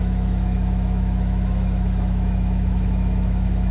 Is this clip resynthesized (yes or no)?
yes